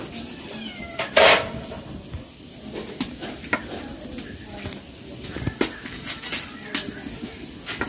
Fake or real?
real